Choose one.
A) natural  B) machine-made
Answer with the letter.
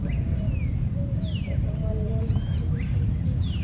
B